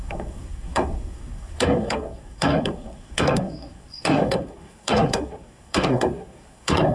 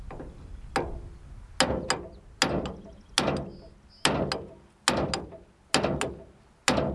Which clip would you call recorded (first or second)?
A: second